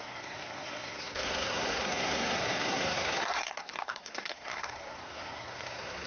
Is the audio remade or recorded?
remade